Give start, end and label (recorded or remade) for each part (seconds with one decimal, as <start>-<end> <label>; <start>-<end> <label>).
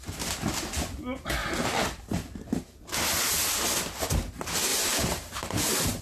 0.0-4.7 recorded; 4.7-5.5 remade; 5.5-6.0 recorded